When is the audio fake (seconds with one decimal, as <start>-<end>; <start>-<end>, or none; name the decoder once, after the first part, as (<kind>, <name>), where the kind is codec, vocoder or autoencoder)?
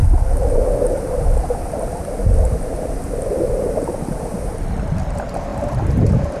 none